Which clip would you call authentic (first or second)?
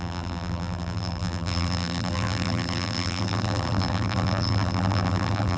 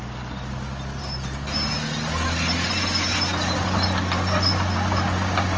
second